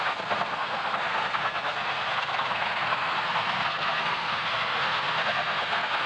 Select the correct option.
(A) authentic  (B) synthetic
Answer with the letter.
B